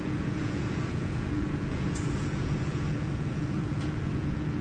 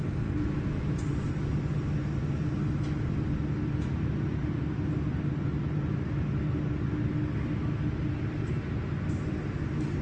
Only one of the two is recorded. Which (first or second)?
second